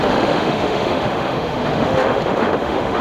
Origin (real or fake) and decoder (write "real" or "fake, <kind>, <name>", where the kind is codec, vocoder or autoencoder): fake, autoencoder, DAC-VAE